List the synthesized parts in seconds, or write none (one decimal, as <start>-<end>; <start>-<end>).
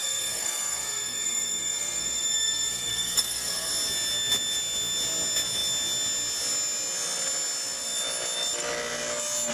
0.0-3.7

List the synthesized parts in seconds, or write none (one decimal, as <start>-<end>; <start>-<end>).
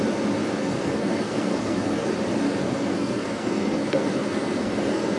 0.6-2.0; 2.6-5.2